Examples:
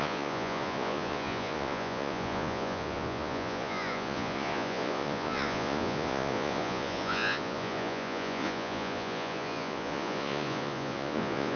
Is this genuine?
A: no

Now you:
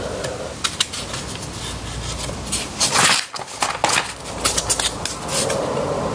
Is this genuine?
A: yes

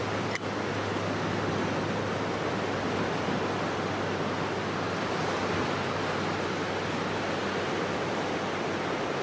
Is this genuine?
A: yes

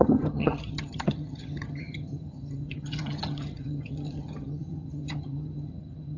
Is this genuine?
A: no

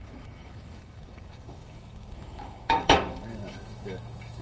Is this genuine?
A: no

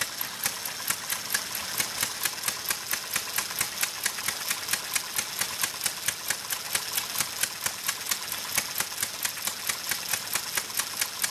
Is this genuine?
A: yes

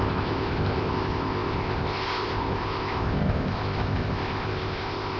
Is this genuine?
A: no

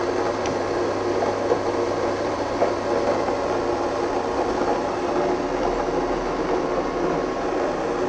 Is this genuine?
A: yes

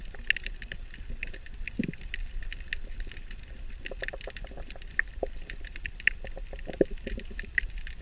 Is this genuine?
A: yes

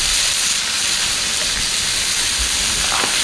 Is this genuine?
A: yes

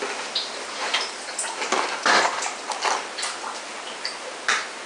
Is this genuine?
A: yes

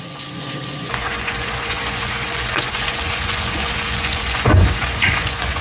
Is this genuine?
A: no